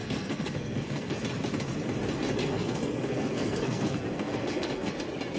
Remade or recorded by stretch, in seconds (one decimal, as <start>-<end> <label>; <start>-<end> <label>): 0.0-1.2 remade; 1.2-2.4 recorded; 2.4-4.9 remade; 4.9-5.4 recorded